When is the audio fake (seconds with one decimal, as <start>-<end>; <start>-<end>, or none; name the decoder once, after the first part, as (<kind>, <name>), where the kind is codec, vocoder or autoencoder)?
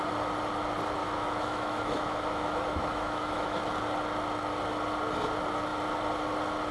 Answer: 1.0-3.6 (autoencoder, DAC-VAE)